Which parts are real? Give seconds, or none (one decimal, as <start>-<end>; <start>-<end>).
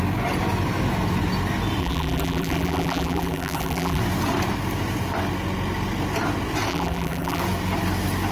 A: 0.0-1.8; 4.0-6.7; 7.4-8.3